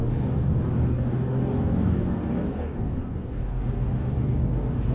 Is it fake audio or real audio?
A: fake